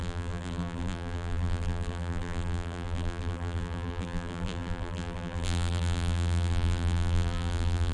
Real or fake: fake